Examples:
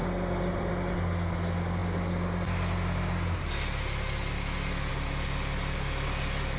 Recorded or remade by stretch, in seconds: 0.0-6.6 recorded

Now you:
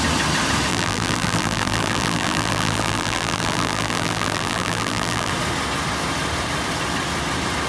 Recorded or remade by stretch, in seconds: 0.0-0.7 recorded; 0.7-5.3 remade; 5.3-7.7 recorded